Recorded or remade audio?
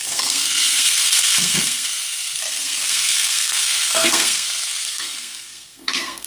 remade